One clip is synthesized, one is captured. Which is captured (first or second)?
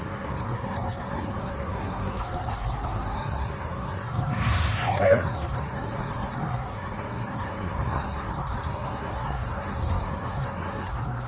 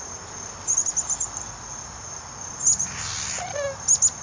second